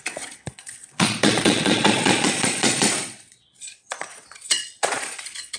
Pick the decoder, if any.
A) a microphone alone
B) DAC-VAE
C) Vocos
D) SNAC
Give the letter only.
C